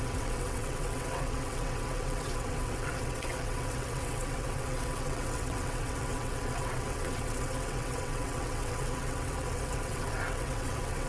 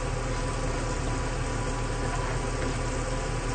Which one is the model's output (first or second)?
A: first